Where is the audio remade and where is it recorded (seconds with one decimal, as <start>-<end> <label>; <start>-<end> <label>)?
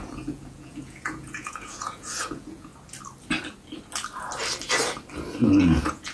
0.0-2.7 remade; 2.7-5.6 recorded; 5.6-6.1 remade